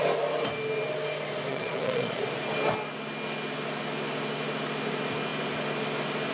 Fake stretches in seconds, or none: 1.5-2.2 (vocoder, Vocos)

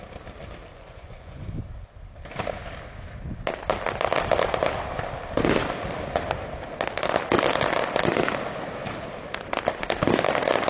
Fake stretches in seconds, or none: 0.7-1.6 (vocoder, Vocos)

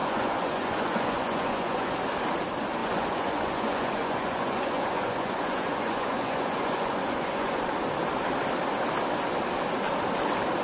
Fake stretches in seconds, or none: 0.0-1.9 (vocoder, Vocos); 2.8-7.6

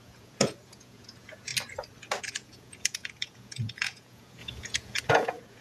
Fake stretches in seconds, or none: 0.0-1.5 (vocoder, Vocos); 2.2-5.6